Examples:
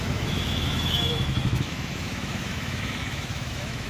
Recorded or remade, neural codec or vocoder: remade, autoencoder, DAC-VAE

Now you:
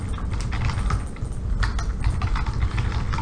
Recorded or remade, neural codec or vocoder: recorded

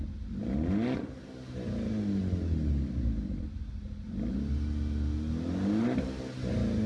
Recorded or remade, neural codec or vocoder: recorded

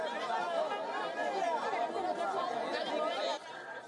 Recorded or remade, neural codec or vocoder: recorded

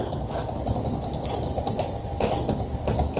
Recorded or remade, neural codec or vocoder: recorded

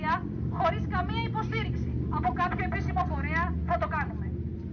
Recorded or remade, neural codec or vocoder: recorded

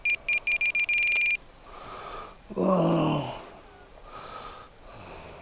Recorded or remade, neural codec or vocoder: recorded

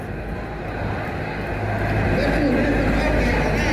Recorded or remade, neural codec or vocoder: recorded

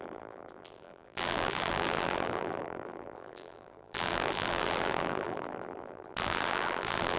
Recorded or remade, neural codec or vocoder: remade, vocoder, BigVGAN v2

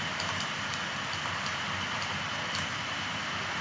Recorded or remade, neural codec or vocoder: recorded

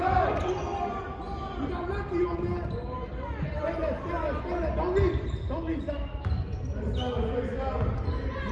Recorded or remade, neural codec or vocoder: recorded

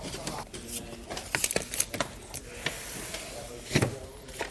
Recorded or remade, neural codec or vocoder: recorded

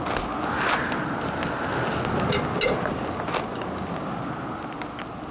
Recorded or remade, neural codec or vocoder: recorded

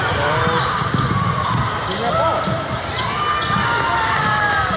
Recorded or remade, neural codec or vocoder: recorded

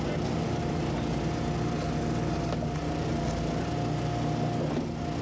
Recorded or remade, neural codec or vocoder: recorded